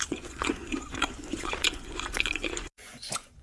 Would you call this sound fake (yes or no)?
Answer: yes